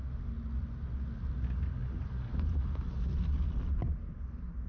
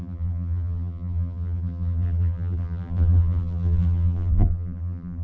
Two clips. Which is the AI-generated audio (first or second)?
second